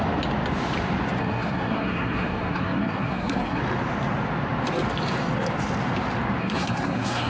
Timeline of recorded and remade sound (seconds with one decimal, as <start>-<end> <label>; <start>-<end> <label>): 0.0-1.2 recorded; 1.2-3.6 remade; 3.6-6.4 recorded; 6.4-7.3 remade